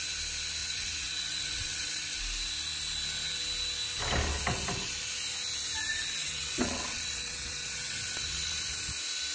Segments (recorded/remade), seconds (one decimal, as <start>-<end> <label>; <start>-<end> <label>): 0.0-0.6 recorded; 0.6-2.2 remade; 2.2-6.2 recorded; 6.2-8.5 remade; 8.5-9.3 recorded